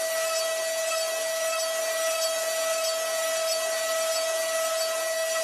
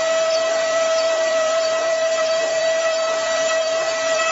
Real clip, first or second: first